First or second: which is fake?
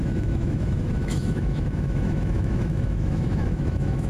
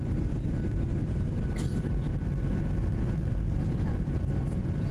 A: first